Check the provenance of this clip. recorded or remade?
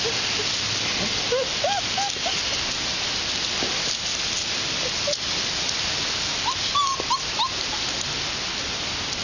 recorded